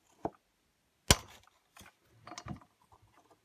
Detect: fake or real real